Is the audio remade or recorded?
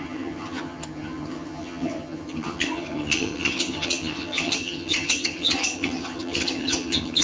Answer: remade